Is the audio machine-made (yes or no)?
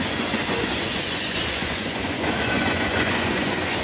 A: yes